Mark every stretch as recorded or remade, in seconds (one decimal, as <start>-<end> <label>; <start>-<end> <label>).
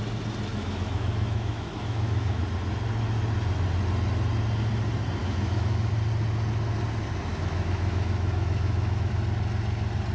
0.0-0.5 recorded; 0.5-2.4 remade; 2.4-5.2 recorded; 5.2-5.9 remade; 5.9-7.3 recorded; 7.3-9.1 remade; 9.1-10.1 recorded